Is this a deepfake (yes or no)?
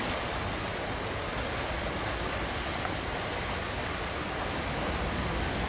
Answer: no